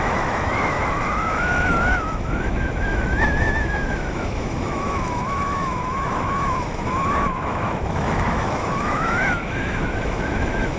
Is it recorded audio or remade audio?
remade